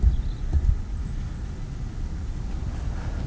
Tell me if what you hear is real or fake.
real